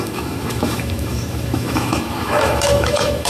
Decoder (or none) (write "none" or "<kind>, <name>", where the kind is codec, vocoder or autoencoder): autoencoder, DAC-VAE